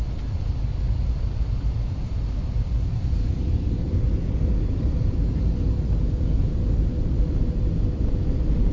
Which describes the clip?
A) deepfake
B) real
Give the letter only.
B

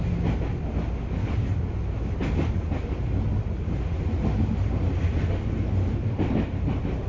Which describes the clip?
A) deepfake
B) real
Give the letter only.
B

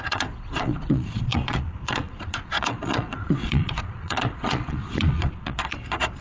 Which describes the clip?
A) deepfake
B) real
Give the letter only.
A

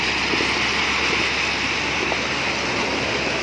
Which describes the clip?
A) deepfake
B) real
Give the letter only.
B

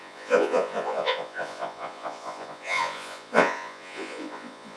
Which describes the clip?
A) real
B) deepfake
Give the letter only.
B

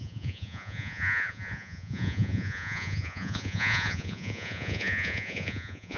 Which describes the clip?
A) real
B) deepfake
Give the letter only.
B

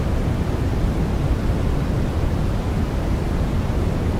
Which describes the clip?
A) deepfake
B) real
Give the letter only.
B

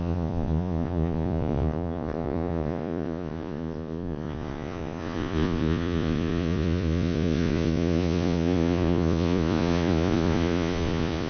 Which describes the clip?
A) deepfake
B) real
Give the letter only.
A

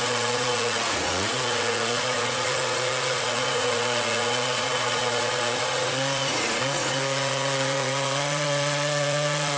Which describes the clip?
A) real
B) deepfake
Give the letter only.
B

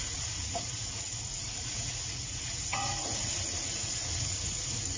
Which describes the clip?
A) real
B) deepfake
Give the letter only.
B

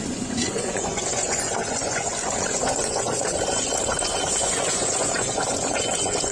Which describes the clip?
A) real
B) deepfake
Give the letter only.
B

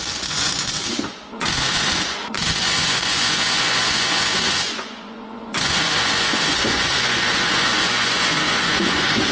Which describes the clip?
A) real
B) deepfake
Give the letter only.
B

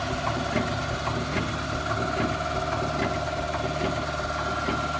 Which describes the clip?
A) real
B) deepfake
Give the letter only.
A